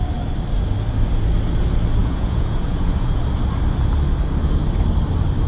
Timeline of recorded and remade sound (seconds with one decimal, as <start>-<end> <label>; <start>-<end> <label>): 0.0-2.0 recorded; 2.0-3.2 remade; 3.2-5.5 recorded